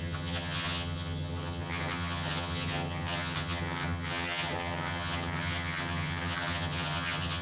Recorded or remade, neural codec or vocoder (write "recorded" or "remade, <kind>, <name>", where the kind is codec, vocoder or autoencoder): remade, vocoder, HiFi-GAN